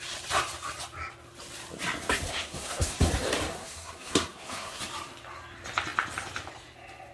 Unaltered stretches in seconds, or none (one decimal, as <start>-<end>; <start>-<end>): 0.0-2.3; 3.1-3.5; 4.8-7.1